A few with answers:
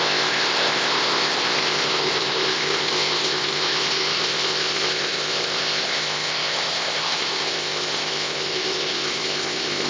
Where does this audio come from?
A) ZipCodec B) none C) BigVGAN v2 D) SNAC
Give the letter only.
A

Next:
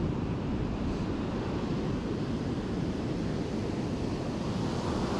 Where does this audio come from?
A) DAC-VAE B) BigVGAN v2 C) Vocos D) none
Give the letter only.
D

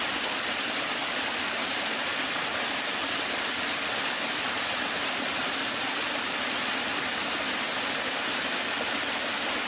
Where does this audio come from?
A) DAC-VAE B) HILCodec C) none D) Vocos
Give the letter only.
C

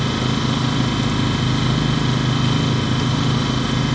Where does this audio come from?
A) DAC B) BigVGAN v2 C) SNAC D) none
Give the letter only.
D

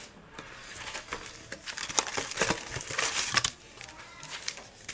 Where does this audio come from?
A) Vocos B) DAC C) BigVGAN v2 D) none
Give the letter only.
D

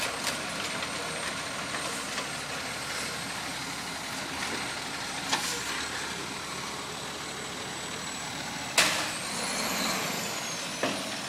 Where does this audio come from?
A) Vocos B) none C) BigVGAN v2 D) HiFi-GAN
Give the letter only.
B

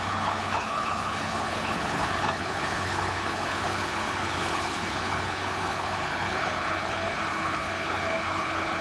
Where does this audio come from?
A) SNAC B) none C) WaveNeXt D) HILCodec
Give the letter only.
D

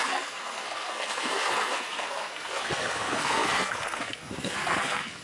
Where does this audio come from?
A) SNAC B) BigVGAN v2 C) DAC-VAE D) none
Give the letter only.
A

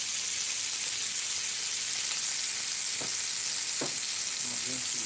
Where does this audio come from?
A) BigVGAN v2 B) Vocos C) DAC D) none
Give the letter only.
D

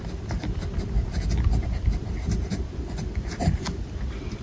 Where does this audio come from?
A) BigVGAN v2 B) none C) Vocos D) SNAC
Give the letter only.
A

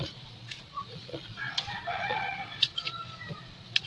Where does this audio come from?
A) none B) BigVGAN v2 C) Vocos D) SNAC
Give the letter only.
C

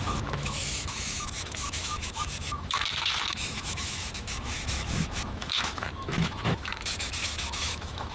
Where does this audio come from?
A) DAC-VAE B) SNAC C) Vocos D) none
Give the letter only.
A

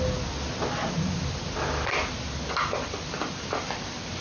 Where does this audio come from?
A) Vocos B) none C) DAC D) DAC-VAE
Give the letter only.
B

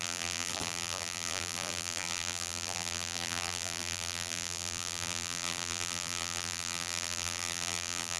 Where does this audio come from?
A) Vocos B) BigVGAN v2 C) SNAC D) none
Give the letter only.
B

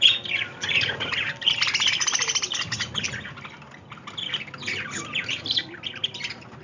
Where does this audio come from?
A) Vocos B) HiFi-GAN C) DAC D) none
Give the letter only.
D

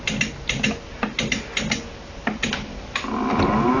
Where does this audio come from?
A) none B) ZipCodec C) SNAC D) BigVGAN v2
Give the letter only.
A